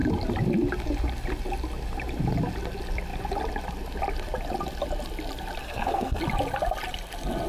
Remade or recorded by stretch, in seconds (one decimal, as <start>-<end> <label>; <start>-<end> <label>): 0.0-5.6 recorded; 5.6-6.2 remade; 6.2-7.5 recorded